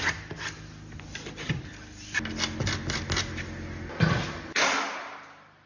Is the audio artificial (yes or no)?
no